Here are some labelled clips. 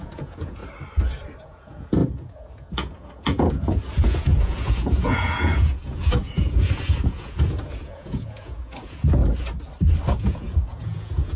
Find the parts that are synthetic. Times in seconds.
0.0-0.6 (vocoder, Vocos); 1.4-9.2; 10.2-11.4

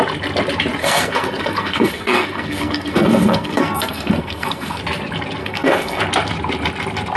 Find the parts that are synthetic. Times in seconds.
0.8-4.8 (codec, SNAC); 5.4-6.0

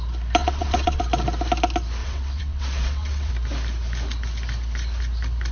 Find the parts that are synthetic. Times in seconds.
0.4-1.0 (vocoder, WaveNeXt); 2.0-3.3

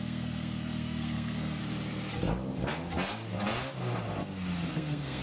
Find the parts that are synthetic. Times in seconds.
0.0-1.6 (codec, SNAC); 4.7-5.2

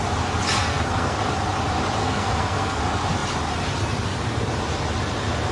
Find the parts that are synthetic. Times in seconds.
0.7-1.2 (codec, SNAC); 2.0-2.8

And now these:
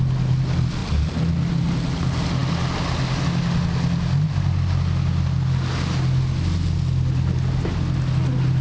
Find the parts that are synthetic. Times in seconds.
none